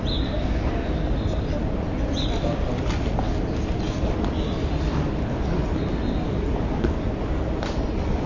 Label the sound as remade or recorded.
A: recorded